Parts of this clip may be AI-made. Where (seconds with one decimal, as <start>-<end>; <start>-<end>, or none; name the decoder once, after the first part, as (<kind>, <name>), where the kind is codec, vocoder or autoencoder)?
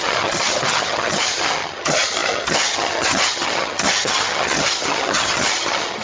0.0-6.0 (vocoder, HiFi-GAN)